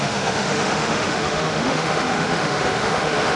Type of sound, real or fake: fake